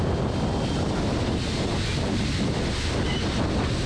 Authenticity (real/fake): real